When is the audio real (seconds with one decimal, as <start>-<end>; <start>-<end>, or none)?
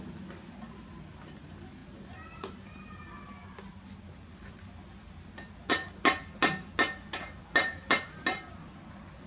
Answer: 0.0-9.3